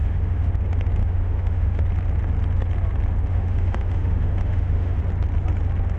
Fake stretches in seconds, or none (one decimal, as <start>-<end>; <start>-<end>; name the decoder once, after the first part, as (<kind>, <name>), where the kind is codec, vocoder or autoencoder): 0.0-0.5 (autoencoder, DAC-VAE); 1.0-1.8; 3.3-5.0